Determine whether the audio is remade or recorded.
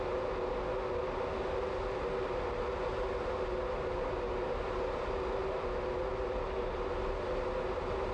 recorded